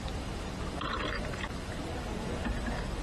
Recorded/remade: recorded